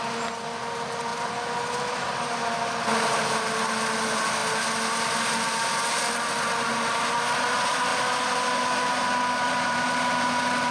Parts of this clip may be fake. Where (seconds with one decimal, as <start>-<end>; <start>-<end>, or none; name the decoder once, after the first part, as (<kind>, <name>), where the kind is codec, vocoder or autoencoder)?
7.9-10.7 (vocoder, BigVGAN v2)